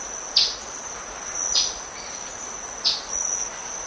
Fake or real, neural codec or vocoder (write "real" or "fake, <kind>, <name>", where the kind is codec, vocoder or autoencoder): real